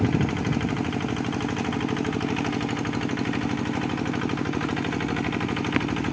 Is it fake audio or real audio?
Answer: real